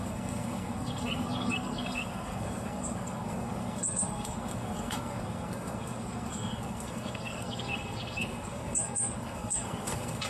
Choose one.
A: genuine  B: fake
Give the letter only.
B